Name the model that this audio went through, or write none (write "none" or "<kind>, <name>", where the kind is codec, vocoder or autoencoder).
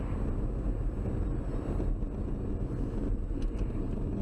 none